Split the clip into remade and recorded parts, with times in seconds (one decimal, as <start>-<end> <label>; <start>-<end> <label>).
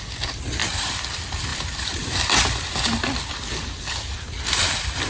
0.0-0.6 recorded; 0.6-1.1 remade; 1.1-1.5 recorded; 1.5-2.1 remade; 2.1-5.1 recorded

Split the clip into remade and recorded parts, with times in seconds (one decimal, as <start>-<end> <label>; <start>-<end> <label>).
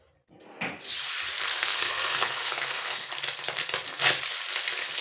0.0-1.5 recorded; 1.5-3.1 remade; 3.1-5.0 recorded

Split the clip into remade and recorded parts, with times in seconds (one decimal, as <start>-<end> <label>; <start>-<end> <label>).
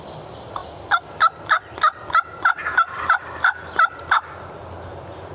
0.0-5.3 recorded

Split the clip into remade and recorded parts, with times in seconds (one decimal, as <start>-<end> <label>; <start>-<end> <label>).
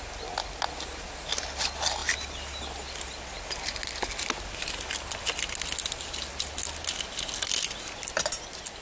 0.0-8.8 recorded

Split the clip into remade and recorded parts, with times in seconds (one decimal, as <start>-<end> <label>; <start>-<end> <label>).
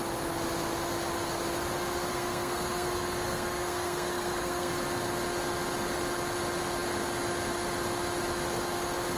0.0-2.1 recorded; 2.1-4.7 remade; 4.7-9.2 recorded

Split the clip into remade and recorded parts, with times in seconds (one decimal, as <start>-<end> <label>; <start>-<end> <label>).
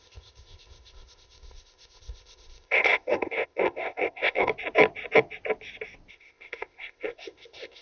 0.0-4.5 remade; 4.5-6.1 recorded; 6.1-7.8 remade